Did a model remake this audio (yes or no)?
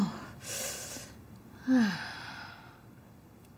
no